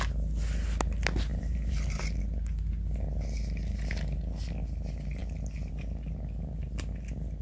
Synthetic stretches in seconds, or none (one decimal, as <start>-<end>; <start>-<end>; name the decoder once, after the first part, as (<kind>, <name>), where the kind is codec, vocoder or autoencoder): 1.3-2.2 (vocoder, BigVGAN v2)